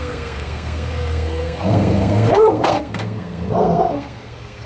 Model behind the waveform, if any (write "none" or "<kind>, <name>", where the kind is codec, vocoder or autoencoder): codec, SNAC